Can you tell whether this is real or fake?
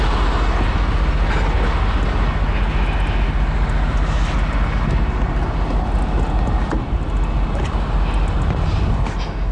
real